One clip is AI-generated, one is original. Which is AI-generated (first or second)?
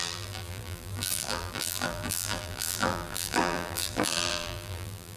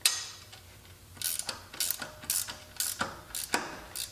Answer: first